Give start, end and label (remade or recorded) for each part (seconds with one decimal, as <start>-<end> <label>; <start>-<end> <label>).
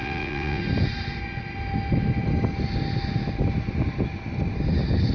0.0-0.6 remade; 0.6-5.1 recorded